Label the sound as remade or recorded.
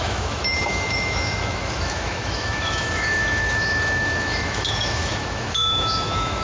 remade